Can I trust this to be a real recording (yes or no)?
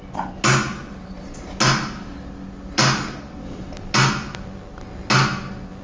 yes